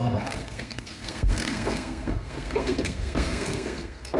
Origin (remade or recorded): remade